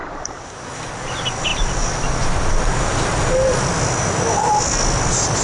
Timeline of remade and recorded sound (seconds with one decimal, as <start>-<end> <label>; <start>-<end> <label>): 0.0-0.6 remade; 0.6-5.4 recorded